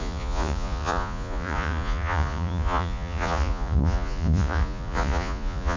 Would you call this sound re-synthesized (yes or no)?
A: yes